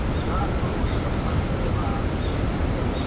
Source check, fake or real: real